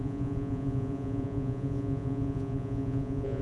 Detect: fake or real fake